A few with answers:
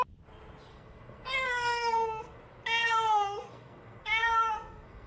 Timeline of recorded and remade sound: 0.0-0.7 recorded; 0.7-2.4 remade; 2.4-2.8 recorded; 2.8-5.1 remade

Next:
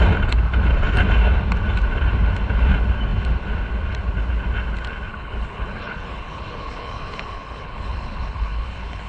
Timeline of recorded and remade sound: 0.0-5.1 recorded; 5.1-9.1 remade

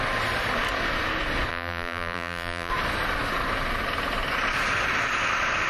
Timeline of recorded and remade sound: 0.0-1.5 recorded; 1.5-2.7 remade; 2.7-5.7 recorded